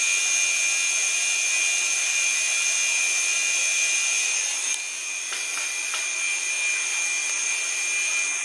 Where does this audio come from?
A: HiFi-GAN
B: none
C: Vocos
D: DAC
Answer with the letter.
B